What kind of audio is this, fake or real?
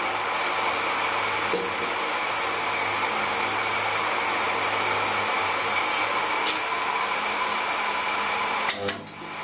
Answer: real